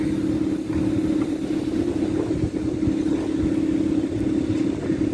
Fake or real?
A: real